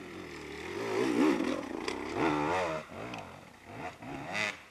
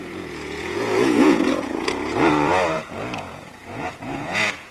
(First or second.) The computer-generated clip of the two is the second